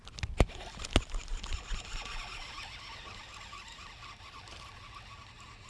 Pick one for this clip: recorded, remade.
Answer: recorded